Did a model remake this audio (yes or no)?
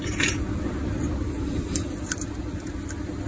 no